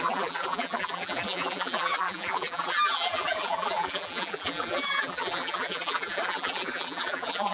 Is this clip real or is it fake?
fake